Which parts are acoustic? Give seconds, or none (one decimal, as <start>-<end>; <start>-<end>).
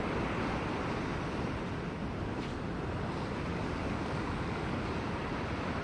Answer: 0.0-3.5; 4.9-5.8